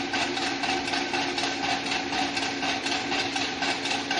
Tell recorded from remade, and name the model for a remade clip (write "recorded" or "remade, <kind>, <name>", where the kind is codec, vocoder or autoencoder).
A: recorded